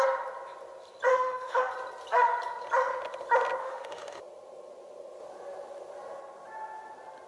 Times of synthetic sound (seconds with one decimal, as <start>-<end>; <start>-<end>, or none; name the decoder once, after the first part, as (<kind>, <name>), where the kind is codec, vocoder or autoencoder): 1.1-1.7 (autoencoder, DAC-VAE); 3.6-4.2

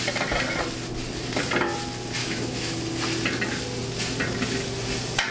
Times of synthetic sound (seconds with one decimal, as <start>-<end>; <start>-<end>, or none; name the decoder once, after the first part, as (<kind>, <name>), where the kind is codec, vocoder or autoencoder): 2.2-2.8 (autoencoder, DAC-VAE)

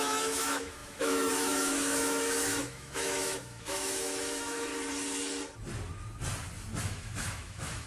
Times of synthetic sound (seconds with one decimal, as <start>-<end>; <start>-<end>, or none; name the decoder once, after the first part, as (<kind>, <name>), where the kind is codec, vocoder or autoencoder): 0.0-4.7 (autoencoder, DAC-VAE); 6.8-7.9

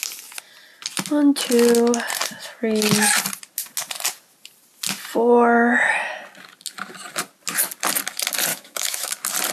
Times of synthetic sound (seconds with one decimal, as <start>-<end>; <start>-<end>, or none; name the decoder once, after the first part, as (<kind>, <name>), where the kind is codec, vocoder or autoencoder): 8.5-9.1 (autoencoder, DAC-VAE)

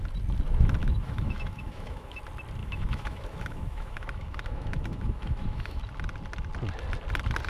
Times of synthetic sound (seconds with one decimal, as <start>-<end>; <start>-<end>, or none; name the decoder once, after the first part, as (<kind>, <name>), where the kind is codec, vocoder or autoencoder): 0.8-2.2 (autoencoder, DAC-VAE); 2.6-5.8

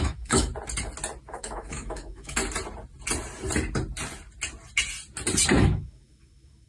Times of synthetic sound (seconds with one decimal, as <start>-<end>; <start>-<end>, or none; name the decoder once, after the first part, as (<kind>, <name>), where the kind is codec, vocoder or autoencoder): 0.0-0.5 (autoencoder, DAC-VAE); 1.3-2.4; 5.6-6.7